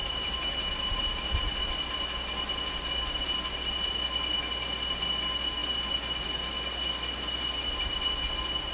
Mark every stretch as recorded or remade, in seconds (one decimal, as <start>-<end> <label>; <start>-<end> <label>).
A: 0.0-1.6 remade; 1.6-8.7 recorded